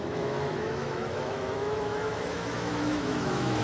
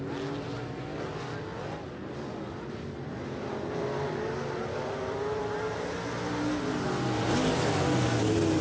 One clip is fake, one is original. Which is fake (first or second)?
first